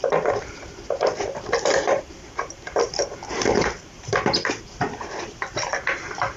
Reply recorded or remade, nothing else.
remade